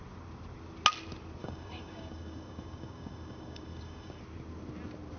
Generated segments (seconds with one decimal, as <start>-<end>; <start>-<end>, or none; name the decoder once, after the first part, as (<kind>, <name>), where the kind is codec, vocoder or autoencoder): 1.4-4.2 (codec, DAC)